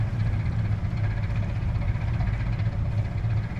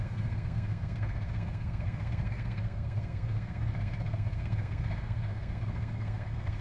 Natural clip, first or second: first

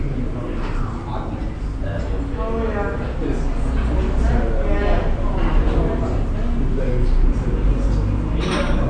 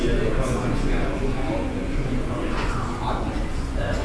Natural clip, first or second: first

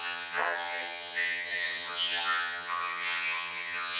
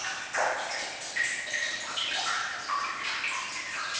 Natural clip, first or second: second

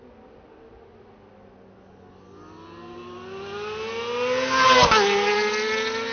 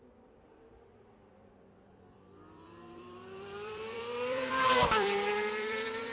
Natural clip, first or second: first